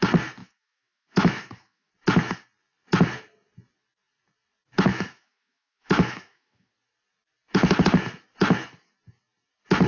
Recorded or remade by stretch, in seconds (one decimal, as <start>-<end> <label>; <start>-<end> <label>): 0.0-0.4 recorded; 0.4-1.9 remade; 1.9-4.9 recorded; 4.9-6.7 remade; 6.7-9.9 recorded